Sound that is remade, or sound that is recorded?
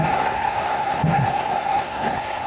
remade